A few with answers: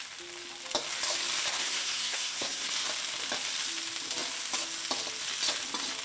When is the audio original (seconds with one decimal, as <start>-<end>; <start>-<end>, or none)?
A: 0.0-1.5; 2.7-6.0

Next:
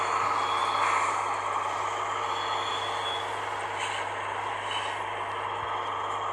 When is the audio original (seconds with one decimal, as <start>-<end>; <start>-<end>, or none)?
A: 0.0-6.3

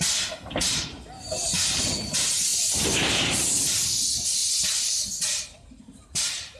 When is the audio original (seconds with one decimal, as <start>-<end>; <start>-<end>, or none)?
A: 0.0-6.6

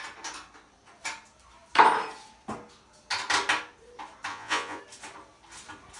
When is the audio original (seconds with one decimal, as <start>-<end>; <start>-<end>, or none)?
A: 0.0-4.3; 4.8-6.0